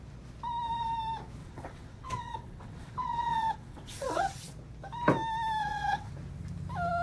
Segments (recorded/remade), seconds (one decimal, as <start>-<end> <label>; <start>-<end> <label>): 0.0-1.4 recorded; 1.4-4.4 remade; 4.4-5.6 recorded; 5.6-6.1 remade; 6.1-7.0 recorded